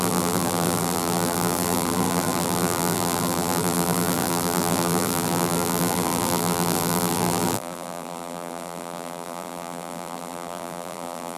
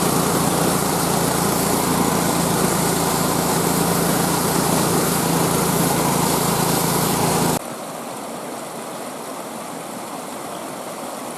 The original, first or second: second